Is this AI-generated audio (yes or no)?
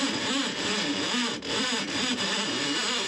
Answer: yes